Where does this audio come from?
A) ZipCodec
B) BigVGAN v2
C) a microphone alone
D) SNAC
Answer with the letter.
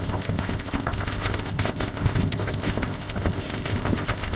A